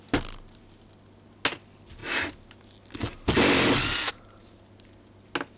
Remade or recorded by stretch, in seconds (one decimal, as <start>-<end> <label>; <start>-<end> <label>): 0.0-5.6 recorded